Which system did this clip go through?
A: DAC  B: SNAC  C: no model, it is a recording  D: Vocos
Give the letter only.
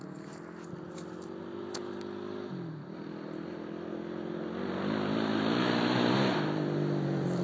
C